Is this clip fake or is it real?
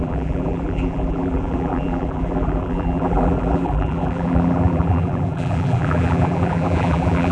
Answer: fake